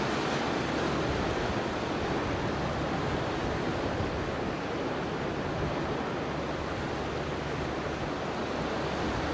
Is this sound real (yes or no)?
yes